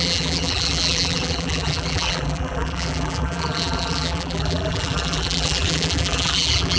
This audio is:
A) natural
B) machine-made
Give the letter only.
B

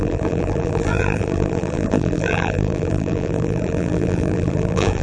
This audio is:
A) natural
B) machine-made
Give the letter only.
B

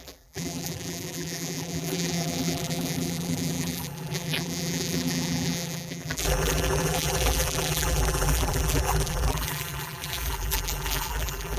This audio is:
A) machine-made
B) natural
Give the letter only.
A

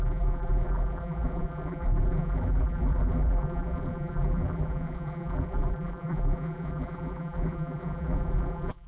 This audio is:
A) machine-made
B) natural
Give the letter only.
A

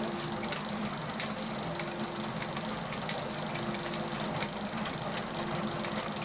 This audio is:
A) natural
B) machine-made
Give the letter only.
A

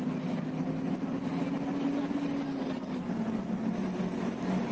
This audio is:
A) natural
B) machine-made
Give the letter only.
A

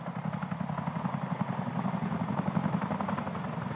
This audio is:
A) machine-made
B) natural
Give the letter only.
B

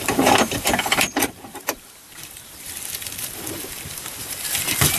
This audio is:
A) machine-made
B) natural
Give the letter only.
A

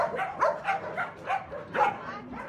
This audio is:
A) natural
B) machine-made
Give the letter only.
A